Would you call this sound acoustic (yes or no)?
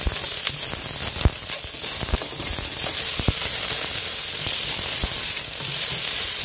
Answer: yes